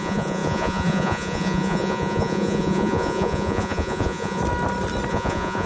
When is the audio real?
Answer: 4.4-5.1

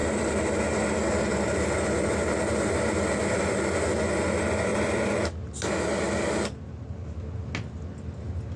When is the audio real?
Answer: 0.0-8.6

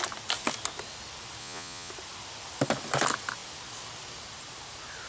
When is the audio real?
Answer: 0.0-1.4; 1.9-5.1

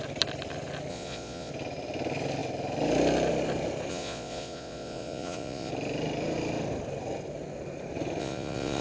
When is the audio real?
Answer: 0.0-0.9; 1.5-3.9; 5.7-8.2